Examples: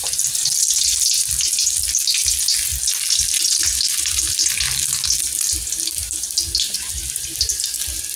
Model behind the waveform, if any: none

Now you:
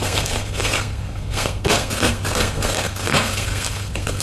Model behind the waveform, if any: codec, SNAC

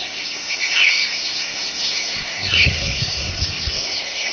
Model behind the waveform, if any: codec, SNAC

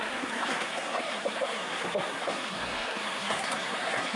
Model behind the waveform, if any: codec, SNAC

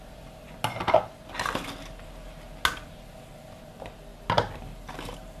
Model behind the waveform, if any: none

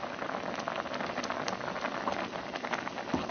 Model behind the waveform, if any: none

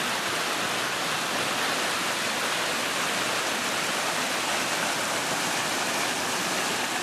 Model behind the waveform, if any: none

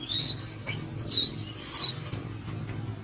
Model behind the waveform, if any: none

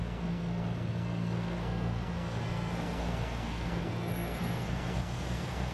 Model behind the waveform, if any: codec, SNAC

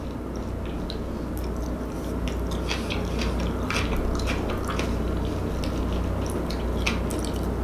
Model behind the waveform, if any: none